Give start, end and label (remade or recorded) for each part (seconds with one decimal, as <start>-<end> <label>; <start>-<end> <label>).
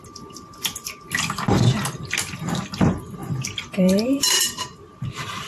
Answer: 0.0-3.2 recorded; 3.2-4.5 remade; 4.5-5.5 recorded